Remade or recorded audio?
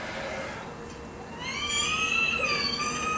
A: recorded